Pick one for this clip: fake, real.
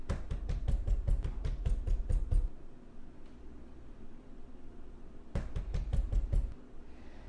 real